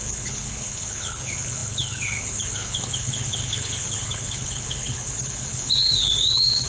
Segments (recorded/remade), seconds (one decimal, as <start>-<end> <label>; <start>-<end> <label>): 0.0-6.7 remade